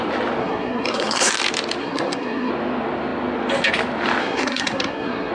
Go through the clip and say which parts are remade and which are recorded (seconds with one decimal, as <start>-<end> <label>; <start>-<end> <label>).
0.0-0.4 recorded; 0.4-1.3 remade; 1.3-1.8 recorded; 1.8-2.5 remade; 2.5-4.2 recorded; 4.2-5.3 remade